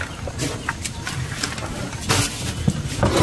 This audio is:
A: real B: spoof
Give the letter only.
A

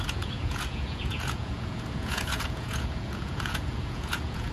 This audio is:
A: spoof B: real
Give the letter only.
A